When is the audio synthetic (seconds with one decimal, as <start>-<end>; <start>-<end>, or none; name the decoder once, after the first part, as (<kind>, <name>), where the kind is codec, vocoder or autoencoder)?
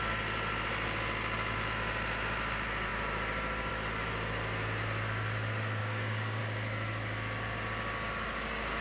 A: 5.8-6.4 (codec, DAC)